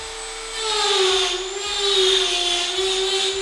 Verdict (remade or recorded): recorded